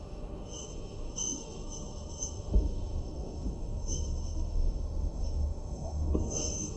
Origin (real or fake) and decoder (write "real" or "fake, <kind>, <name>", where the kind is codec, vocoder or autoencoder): fake, autoencoder, DAC-VAE